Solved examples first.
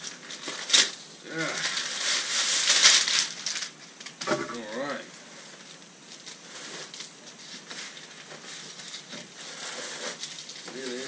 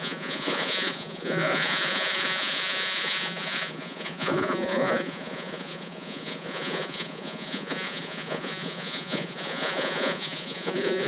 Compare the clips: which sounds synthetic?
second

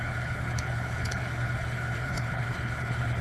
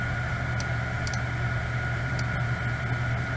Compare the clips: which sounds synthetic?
first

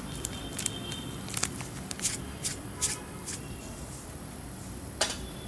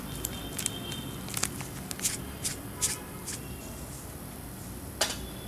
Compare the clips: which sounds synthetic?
first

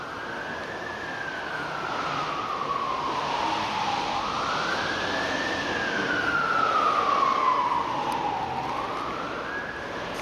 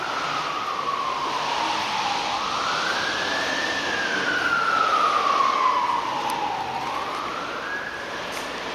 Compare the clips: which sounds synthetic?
second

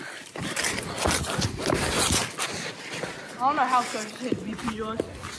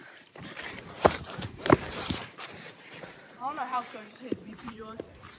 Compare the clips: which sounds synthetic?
second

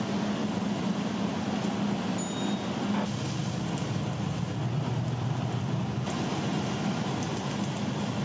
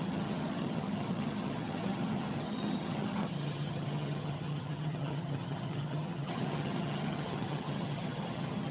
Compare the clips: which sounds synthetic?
second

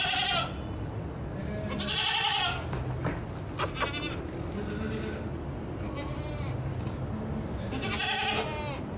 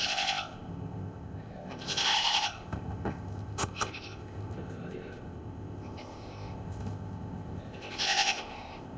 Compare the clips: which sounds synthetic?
second